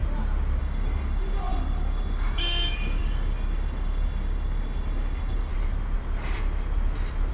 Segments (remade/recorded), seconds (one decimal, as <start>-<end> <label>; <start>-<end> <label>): 0.0-0.6 recorded; 0.6-5.5 remade; 5.5-7.3 recorded